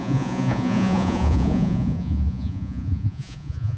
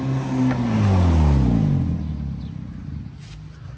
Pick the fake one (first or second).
first